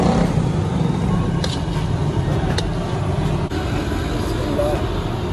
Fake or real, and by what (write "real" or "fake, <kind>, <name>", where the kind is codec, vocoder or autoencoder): real